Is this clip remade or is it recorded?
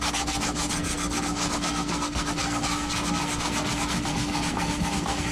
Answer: remade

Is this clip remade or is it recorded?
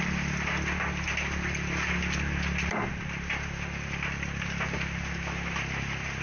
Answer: recorded